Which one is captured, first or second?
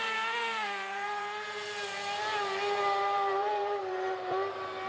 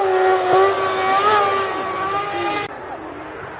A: second